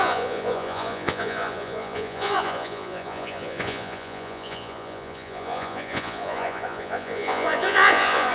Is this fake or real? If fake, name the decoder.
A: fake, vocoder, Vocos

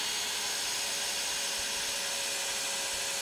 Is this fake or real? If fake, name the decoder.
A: real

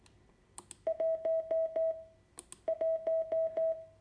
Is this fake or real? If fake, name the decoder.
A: real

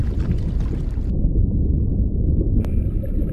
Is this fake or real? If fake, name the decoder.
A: real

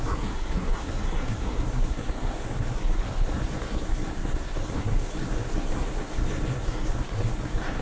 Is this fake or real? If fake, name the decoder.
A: fake, codec, SNAC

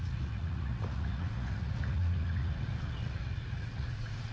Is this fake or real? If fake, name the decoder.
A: fake, vocoder, Vocos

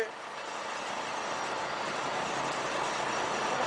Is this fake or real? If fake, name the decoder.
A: real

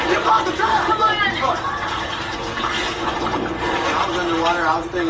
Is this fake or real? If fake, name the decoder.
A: fake, vocoder, BigVGAN v2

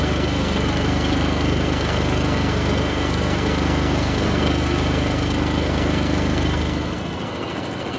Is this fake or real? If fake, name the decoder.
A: fake, codec, SNAC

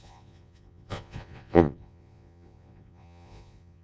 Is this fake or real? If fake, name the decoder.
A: fake, vocoder, Vocos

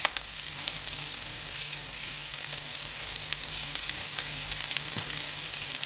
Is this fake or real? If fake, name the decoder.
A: fake, codec, DAC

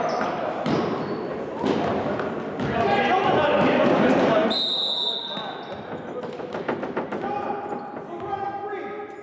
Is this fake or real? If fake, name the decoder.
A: real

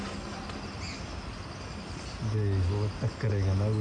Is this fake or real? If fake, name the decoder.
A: real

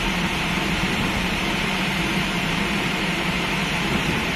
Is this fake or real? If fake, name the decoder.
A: fake, vocoder, BigVGAN v2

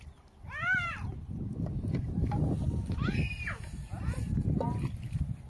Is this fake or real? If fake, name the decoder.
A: real